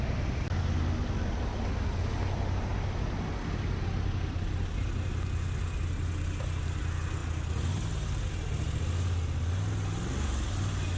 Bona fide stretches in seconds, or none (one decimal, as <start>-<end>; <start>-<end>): 0.0-11.0